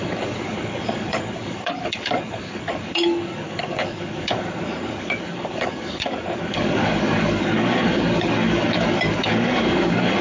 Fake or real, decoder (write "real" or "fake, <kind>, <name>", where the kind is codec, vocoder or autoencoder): fake, codec, DAC